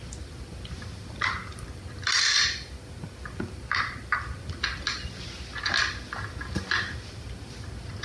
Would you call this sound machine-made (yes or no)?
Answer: no